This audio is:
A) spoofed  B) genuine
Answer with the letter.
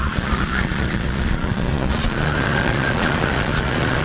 A